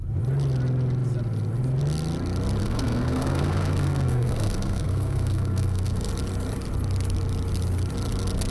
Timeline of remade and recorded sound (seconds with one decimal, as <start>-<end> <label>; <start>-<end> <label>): 0.0-2.6 recorded; 2.6-6.1 remade; 6.1-8.5 recorded